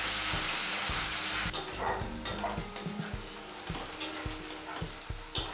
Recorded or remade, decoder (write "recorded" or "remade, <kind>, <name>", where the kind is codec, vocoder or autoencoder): recorded